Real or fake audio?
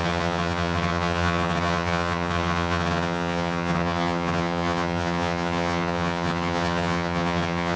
fake